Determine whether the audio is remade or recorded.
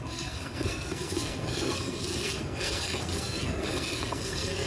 remade